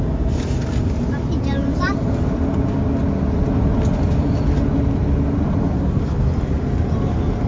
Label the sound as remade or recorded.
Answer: recorded